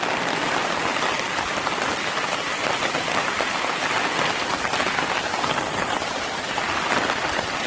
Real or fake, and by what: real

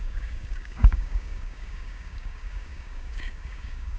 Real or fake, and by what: fake, codec, DAC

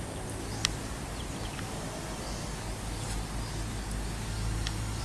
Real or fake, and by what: real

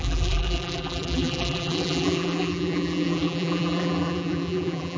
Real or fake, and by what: fake, vocoder, BigVGAN v2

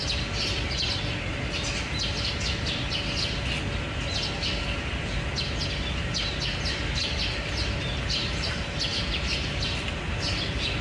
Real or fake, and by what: real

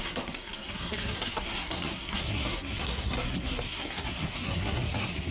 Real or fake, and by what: fake, codec, SNAC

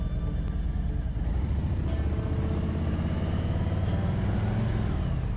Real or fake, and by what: real